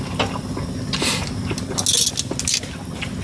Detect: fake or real real